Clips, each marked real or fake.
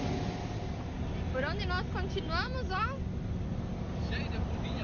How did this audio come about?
real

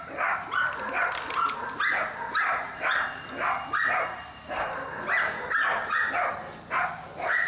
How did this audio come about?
real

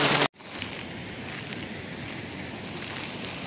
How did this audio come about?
real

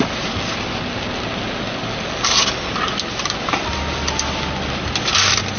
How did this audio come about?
real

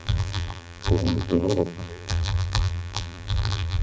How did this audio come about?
fake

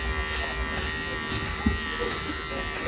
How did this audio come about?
real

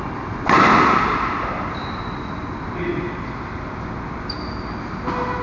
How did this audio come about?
real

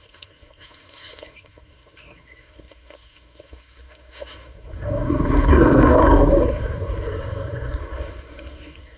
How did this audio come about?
fake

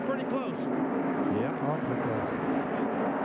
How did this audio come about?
real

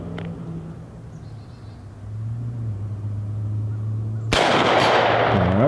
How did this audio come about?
real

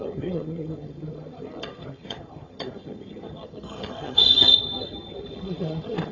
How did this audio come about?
fake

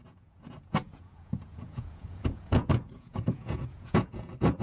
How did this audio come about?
fake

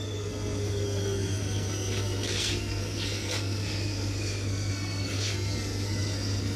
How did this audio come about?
fake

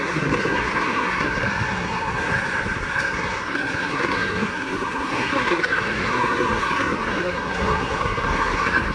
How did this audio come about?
fake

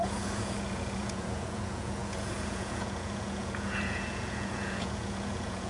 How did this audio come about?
fake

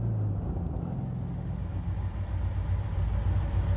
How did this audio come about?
real